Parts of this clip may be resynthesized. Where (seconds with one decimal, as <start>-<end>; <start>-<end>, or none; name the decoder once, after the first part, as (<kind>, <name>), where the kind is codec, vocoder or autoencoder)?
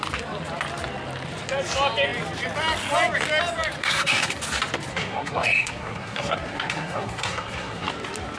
3.8-4.4 (codec, SNAC); 4.9-7.9